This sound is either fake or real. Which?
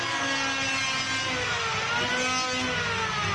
real